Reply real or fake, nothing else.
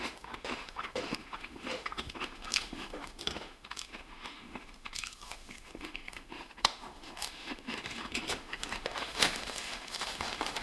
fake